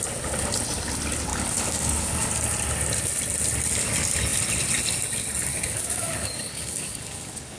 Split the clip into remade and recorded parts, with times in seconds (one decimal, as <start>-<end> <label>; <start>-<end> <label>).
0.0-1.3 recorded; 1.3-2.3 remade; 2.3-5.5 recorded; 5.5-7.6 remade